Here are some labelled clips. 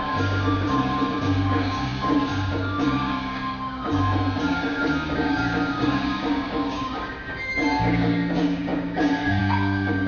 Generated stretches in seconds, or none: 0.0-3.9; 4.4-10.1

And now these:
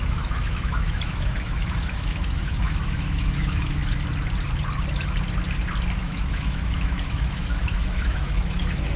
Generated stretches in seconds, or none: 0.0-3.8; 6.0-9.0

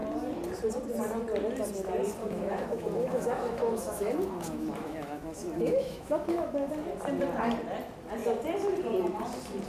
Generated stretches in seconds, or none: 2.2-6.7